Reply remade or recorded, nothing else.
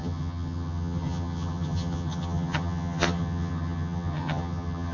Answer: remade